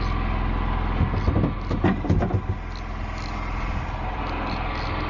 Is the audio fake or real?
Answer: real